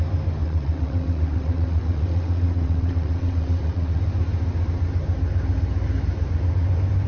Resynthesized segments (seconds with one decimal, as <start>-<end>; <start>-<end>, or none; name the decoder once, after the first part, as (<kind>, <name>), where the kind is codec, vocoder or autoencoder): 0.4-4.0 (vocoder, WaveNeXt)